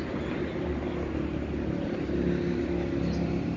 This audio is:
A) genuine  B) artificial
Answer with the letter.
A